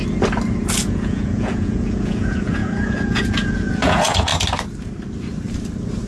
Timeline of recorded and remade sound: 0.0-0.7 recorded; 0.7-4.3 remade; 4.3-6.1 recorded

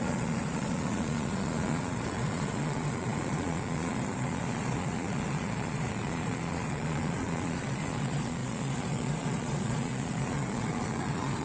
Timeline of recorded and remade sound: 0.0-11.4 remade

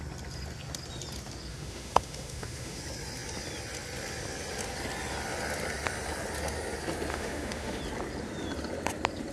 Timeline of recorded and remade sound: 0.0-1.5 recorded; 1.5-2.8 remade; 2.8-7.1 recorded; 7.1-7.8 remade; 7.8-9.3 recorded

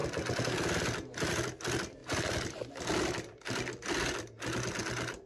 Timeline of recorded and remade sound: 0.0-5.3 recorded

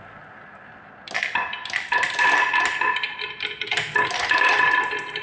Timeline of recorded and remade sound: 0.0-5.2 recorded

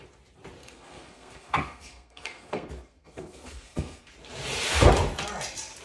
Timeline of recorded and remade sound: 0.0-0.6 recorded; 0.6-4.1 remade; 4.1-5.8 recorded

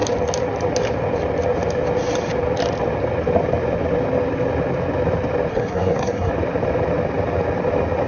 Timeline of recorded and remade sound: 0.0-5.5 recorded; 5.5-6.3 remade; 6.3-8.1 recorded